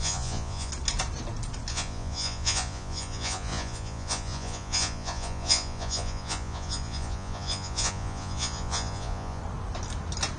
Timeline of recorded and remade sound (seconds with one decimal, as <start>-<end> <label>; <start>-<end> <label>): 0.0-0.7 remade; 0.7-1.7 recorded; 1.7-9.4 remade; 9.4-10.4 recorded